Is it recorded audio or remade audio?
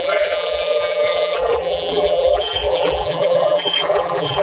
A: remade